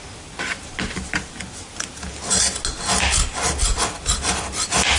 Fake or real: real